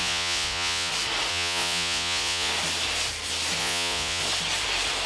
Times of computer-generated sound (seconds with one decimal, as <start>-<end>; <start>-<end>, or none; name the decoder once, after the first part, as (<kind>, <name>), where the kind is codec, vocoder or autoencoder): 0.0-0.9 (vocoder, Vocos); 1.3-2.5; 3.6-4.2